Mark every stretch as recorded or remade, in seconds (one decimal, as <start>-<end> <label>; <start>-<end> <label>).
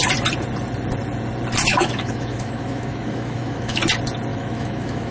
0.0-1.7 recorded; 1.7-3.8 remade; 3.8-4.3 recorded; 4.3-5.1 remade